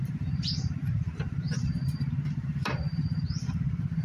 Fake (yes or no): yes